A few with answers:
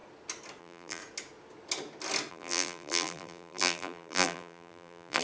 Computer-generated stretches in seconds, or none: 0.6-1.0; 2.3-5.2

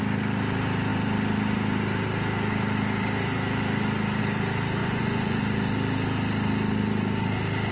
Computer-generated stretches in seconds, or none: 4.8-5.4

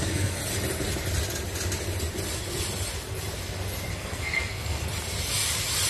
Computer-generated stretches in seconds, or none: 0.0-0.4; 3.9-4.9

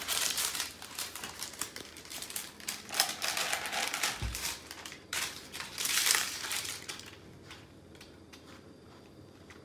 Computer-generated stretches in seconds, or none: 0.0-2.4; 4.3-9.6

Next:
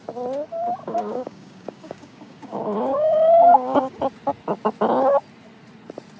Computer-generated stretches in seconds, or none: 0.8-4.0

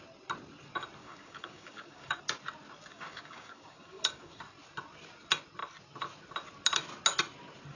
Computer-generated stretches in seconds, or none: 1.0-2.2; 2.9-4.4

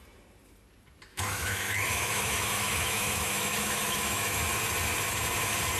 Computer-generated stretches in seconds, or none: 1.1-4.4

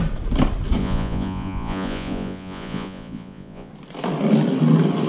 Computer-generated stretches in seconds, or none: 0.8-3.7